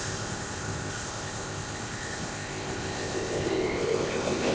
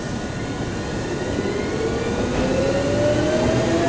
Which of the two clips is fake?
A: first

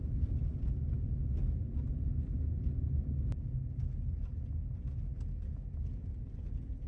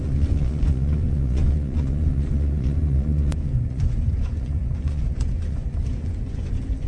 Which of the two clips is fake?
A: second